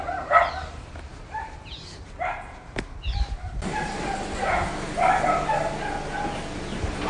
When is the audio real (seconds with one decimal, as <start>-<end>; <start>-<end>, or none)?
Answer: 0.0-7.1